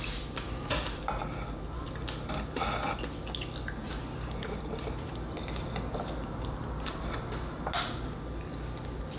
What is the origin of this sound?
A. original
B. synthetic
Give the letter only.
A